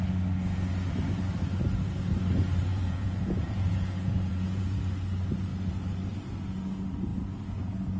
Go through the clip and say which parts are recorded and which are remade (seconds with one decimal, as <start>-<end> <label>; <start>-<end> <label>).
0.0-2.7 recorded; 2.7-4.8 remade; 4.8-8.0 recorded